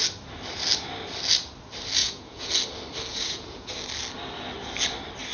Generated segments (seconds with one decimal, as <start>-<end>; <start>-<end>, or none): 2.0-2.5; 3.1-3.7